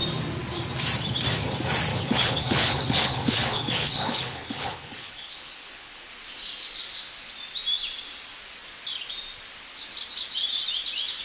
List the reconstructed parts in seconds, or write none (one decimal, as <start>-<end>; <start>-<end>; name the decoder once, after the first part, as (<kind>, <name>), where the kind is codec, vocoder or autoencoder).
1.9-6.1 (codec, HILCodec)